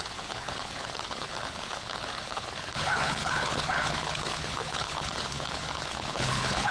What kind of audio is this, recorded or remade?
remade